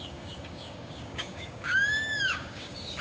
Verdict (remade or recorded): remade